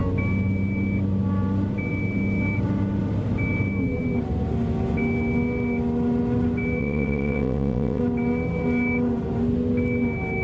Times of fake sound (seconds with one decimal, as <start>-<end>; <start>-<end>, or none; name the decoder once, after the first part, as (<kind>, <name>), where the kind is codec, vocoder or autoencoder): 6.8-8.0 (vocoder, WaveNeXt)